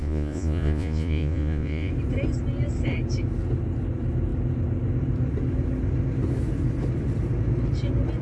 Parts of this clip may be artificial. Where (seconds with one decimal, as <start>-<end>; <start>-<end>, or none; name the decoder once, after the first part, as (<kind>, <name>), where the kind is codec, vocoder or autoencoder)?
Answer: 0.0-1.9 (vocoder, Vocos)